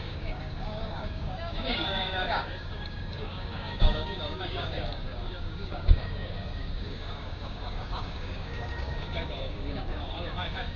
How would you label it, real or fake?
fake